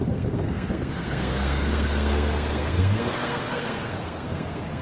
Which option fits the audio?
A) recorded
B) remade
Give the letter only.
B